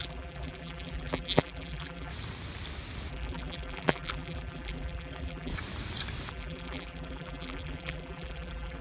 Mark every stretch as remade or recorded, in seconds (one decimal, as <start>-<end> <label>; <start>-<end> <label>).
0.0-2.1 remade; 2.1-3.1 recorded; 3.1-5.5 remade; 5.5-6.3 recorded; 6.3-8.8 remade